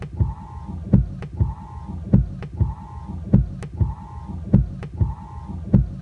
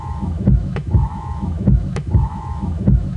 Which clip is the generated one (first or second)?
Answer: second